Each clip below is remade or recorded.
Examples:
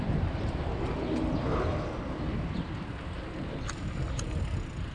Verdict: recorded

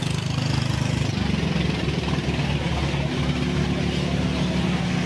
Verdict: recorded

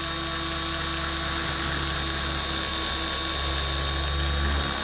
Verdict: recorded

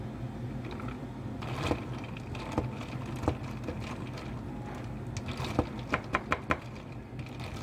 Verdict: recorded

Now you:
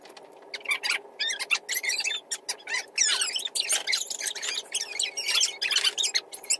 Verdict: recorded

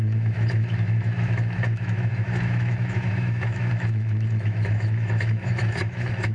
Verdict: remade